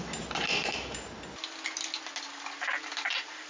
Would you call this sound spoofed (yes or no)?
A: no